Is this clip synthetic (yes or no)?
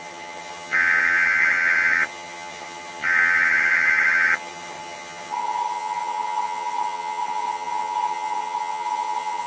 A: yes